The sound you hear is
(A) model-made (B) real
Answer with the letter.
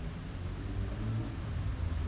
B